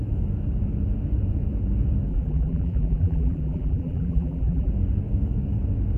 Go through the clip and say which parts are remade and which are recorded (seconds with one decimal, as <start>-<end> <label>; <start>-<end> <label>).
0.0-2.1 recorded; 2.1-4.7 remade; 4.7-6.0 recorded